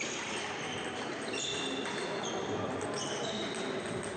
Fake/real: real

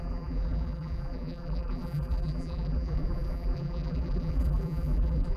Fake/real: fake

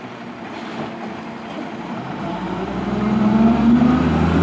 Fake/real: fake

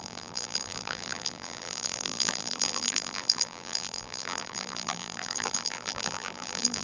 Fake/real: fake